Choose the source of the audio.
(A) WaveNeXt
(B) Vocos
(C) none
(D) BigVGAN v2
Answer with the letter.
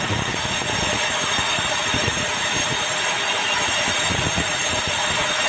B